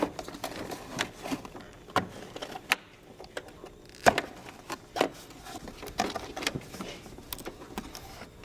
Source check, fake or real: real